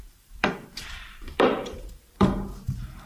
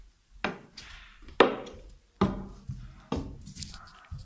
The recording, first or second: second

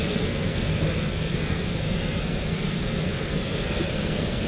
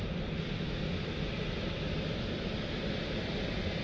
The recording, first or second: second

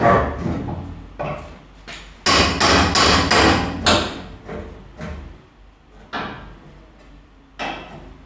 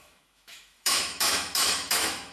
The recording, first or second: first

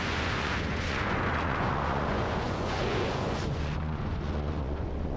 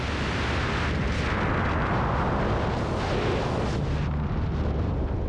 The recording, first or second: second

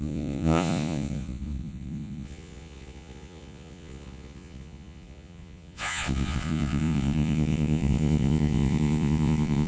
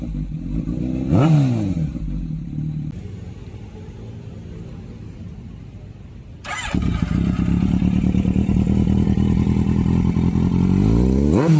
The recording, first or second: second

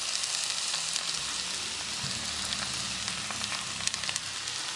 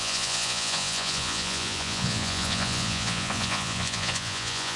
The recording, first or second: first